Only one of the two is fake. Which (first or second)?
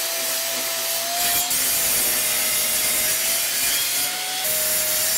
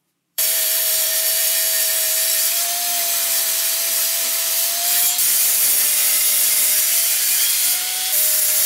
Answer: second